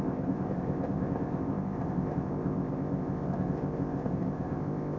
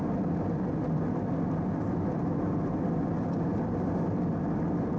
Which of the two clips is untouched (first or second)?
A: second